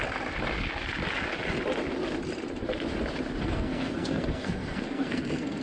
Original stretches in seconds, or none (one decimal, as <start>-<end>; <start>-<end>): 0.0-3.4